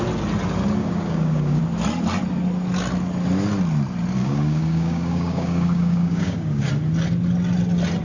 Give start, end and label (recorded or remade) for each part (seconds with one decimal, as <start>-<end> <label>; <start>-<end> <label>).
0.0-0.8 recorded; 0.8-1.6 remade; 1.6-4.2 recorded; 4.2-6.7 remade; 6.7-8.0 recorded